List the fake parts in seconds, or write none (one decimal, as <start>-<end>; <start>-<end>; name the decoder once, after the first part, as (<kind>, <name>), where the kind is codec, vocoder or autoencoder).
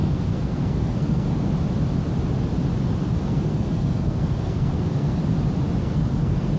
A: 0.0-1.5 (codec, SNAC); 3.0-5.2; 5.8-6.6